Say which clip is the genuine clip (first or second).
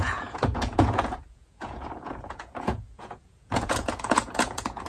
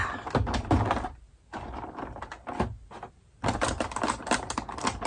second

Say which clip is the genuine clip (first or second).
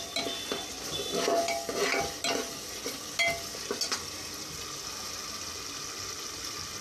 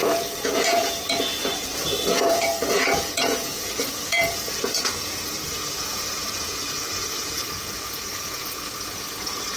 first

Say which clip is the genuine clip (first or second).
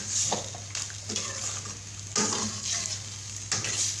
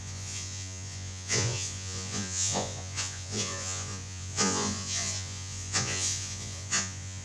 first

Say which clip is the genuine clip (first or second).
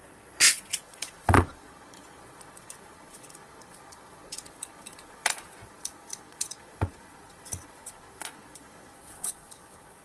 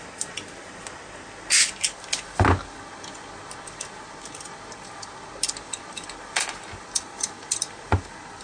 second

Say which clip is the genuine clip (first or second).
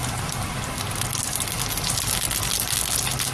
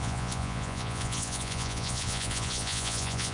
first